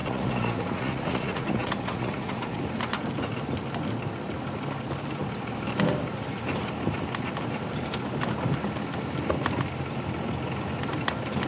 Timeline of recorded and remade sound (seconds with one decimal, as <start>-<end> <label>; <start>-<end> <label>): 0.0-2.6 remade; 2.6-11.5 recorded